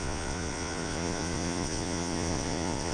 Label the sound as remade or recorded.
remade